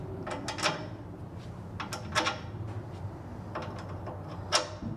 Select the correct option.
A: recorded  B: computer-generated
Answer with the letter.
A